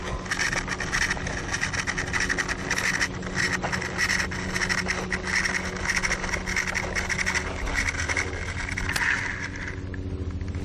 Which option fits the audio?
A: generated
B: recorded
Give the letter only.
B